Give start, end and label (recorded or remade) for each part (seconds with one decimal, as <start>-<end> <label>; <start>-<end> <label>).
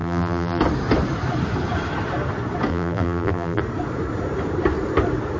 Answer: 0.0-0.6 remade; 0.6-2.7 recorded; 2.7-3.6 remade; 3.6-5.4 recorded